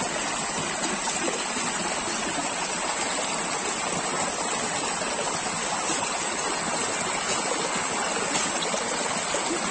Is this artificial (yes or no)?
no